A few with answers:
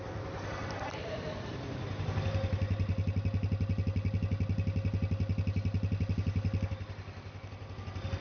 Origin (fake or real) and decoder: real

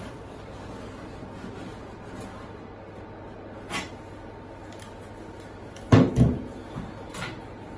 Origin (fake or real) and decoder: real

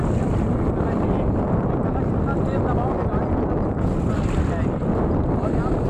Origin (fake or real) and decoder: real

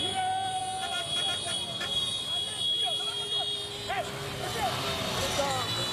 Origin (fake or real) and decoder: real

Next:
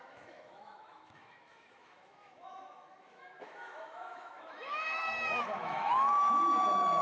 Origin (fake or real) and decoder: fake, autoencoder, DAC-VAE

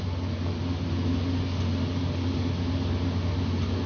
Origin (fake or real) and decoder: real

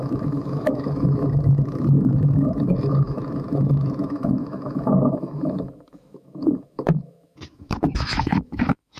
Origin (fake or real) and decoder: fake, autoencoder, DAC-VAE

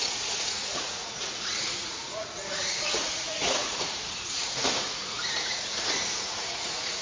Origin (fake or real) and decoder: fake, vocoder, Vocos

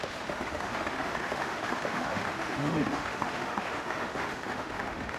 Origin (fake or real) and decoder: fake, autoencoder, DAC-VAE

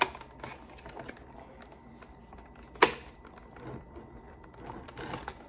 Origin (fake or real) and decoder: real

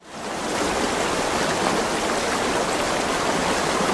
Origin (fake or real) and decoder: real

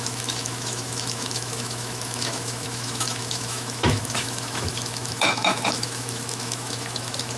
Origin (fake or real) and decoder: fake, autoencoder, DAC-VAE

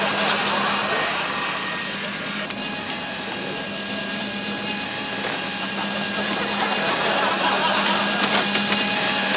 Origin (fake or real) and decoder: real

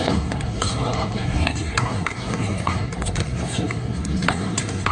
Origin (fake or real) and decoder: fake, codec, SNAC